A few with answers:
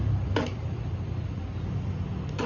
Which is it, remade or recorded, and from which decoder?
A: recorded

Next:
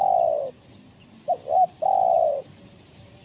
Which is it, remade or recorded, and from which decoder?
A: recorded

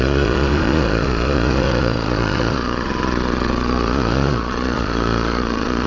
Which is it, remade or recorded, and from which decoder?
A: remade, vocoder, Vocos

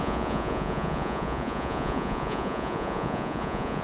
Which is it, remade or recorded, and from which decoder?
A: remade, vocoder, Vocos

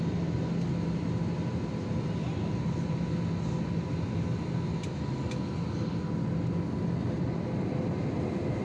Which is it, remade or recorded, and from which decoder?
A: recorded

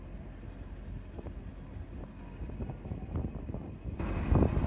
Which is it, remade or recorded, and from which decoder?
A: recorded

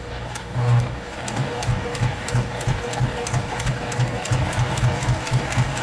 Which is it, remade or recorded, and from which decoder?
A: remade, codec, DAC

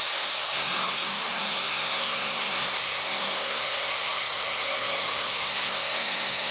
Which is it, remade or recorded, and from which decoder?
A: remade, codec, SNAC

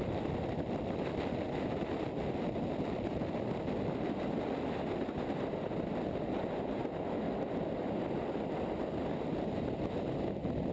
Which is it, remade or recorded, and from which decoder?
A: recorded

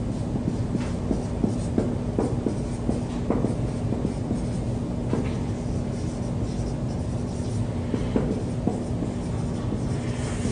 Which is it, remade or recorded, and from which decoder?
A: recorded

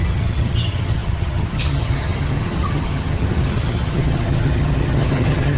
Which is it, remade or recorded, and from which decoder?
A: remade, vocoder, HiFi-GAN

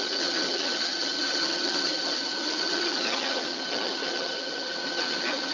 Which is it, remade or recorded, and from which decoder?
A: remade, vocoder, HiFi-GAN